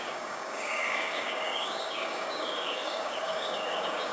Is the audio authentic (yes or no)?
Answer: no